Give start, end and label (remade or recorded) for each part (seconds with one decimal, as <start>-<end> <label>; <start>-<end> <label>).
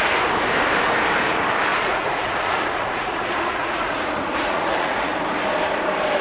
0.0-1.7 recorded; 1.7-5.1 remade; 5.1-6.2 recorded